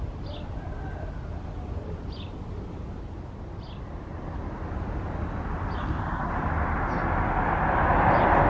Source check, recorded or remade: recorded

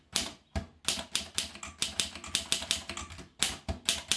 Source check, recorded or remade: recorded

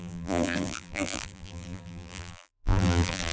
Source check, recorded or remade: remade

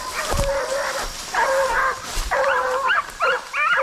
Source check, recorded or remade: recorded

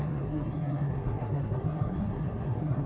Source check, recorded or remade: remade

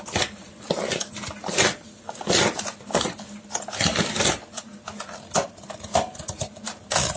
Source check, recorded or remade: recorded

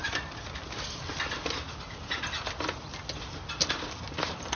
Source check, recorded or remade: recorded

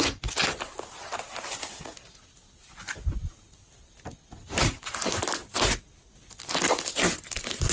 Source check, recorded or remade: recorded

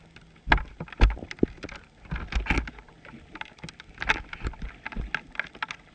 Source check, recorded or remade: recorded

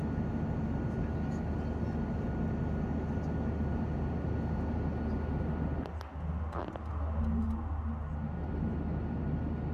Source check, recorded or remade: recorded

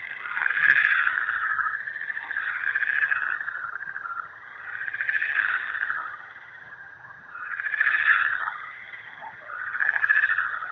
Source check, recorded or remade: remade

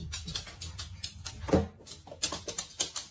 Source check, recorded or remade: recorded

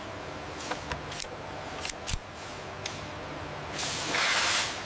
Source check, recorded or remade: recorded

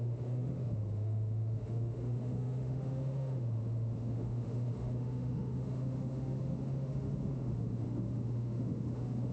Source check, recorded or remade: remade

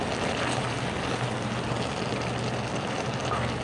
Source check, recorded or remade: recorded